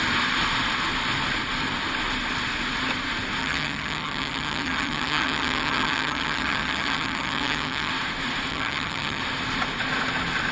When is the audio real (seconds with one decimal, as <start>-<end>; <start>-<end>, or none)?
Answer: 0.0-3.4; 7.9-8.5; 9.2-10.5